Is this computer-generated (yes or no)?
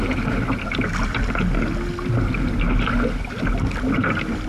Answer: no